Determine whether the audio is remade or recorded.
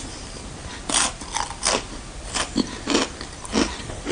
recorded